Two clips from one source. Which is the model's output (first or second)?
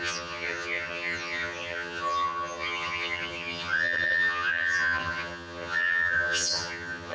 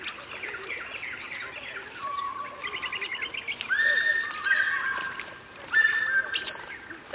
first